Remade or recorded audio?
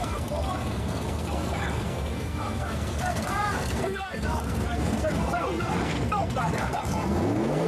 remade